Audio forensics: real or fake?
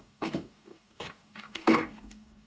fake